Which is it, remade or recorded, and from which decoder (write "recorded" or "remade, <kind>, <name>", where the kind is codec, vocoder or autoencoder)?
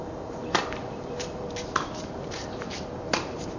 remade, vocoder, BigVGAN v2